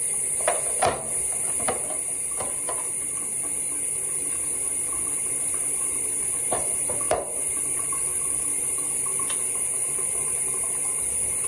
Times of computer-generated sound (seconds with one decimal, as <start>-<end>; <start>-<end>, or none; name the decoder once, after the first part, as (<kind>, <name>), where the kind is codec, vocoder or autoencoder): none